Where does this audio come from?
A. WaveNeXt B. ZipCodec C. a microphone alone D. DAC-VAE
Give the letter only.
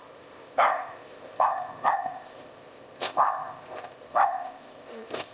B